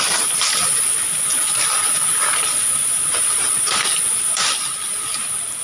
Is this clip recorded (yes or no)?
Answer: no